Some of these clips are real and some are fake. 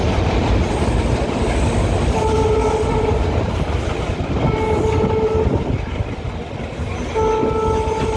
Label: real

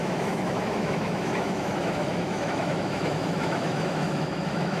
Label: fake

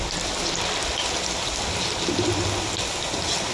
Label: real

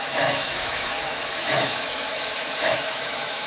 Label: fake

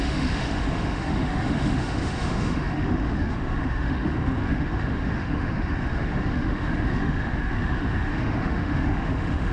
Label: fake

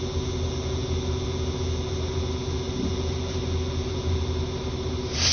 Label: real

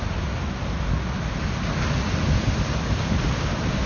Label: real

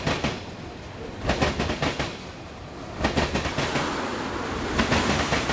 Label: real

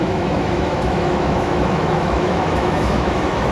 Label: fake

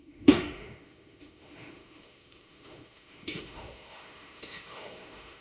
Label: fake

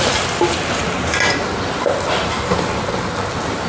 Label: real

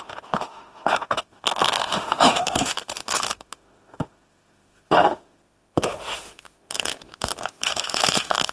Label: fake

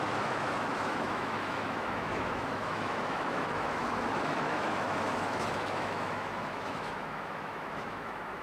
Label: fake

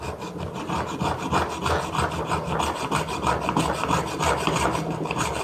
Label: real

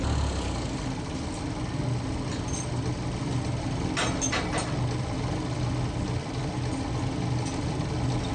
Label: real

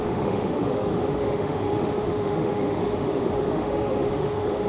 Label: fake